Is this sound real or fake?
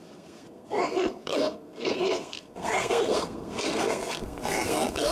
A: fake